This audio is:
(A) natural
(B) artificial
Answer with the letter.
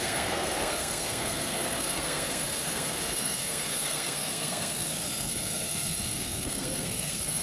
B